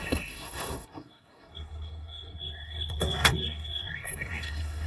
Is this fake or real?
fake